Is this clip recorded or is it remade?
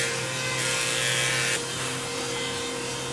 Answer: recorded